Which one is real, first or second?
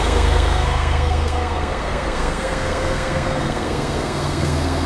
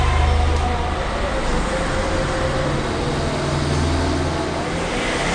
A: second